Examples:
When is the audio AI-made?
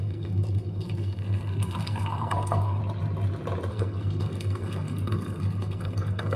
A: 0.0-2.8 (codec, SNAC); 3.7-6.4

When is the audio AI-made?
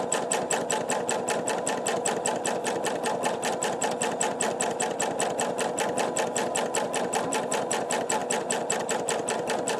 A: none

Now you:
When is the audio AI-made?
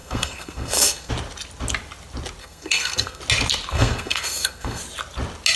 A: 0.0-1.1 (codec, SNAC); 2.4-3.2; 3.7-4.8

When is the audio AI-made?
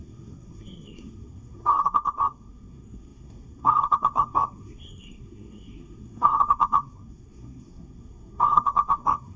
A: 0.0-9.4 (codec, SNAC)